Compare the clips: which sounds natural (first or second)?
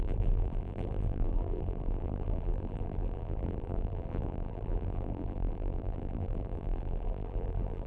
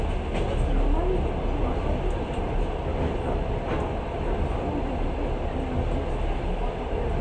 second